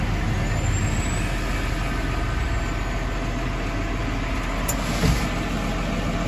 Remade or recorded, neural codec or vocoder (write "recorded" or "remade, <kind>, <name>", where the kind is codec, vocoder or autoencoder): recorded